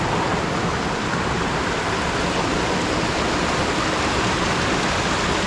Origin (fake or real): real